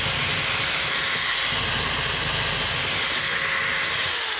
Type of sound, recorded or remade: recorded